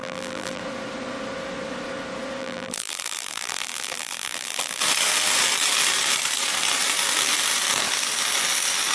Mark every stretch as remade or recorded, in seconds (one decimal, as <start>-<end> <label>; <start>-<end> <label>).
0.0-0.6 remade; 0.6-2.4 recorded; 2.4-4.8 remade; 4.8-8.9 recorded